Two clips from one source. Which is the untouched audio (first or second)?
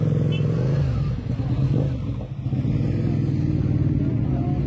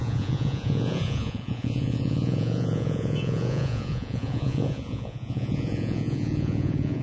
first